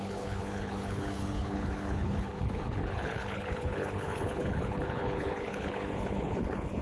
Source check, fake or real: fake